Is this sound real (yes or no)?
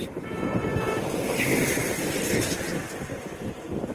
no